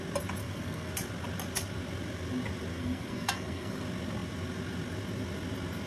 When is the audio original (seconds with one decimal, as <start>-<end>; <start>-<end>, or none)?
0.0-0.4; 0.9-2.7; 3.8-5.9

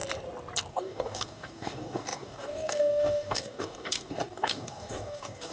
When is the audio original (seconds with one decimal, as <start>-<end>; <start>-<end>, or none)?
0.0-0.7

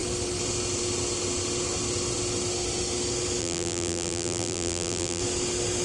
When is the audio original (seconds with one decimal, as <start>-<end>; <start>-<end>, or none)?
0.0-3.4; 5.2-5.8

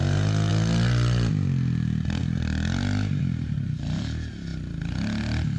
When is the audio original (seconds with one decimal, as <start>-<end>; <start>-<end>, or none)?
0.0-5.6

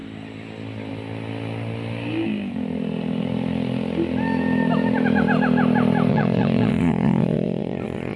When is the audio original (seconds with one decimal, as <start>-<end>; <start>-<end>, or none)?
0.0-6.1

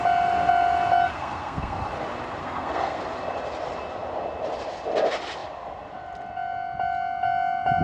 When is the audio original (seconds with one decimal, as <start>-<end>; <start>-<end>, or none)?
0.0-1.1; 1.9-2.4; 3.0-7.8